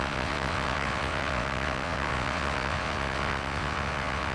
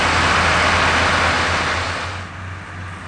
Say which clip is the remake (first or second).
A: first